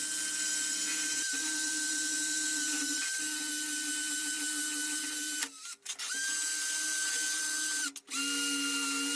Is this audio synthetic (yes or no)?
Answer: no